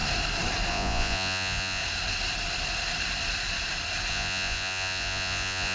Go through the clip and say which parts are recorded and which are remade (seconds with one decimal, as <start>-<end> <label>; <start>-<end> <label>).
0.0-0.7 recorded; 0.7-1.8 remade; 1.8-4.1 recorded; 4.1-5.7 remade